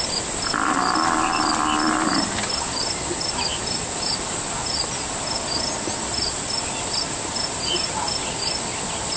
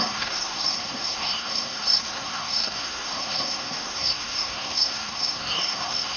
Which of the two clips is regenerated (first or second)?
second